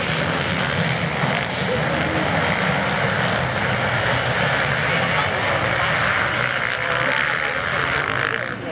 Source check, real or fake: real